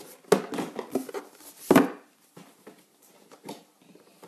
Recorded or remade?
recorded